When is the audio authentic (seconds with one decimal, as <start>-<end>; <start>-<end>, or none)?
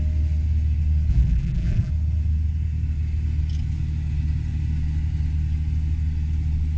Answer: 0.0-1.1; 1.9-6.8